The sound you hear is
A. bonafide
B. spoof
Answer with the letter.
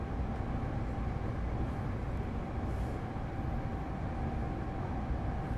A